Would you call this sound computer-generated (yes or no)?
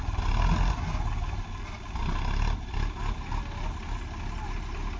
no